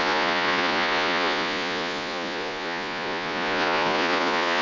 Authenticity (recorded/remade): remade